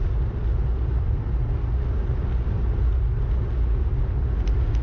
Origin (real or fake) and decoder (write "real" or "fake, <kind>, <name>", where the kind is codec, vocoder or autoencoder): real